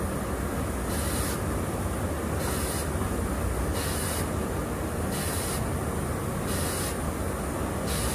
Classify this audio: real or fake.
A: real